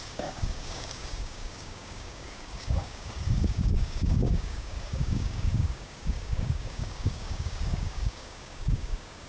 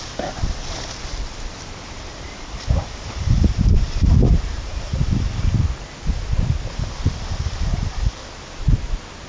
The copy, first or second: first